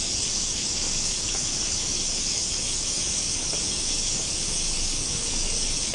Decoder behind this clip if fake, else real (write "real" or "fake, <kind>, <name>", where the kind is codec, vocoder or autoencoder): fake, codec, DAC